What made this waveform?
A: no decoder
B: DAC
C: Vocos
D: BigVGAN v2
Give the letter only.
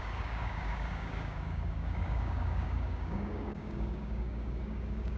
B